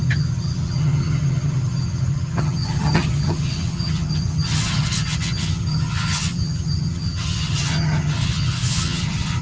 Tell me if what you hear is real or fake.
fake